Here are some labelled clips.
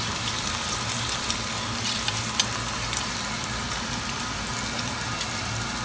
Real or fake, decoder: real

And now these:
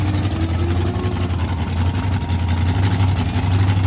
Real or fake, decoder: real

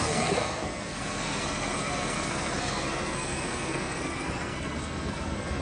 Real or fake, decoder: fake, codec, SNAC